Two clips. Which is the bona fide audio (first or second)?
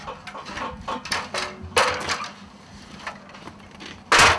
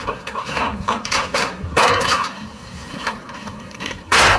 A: first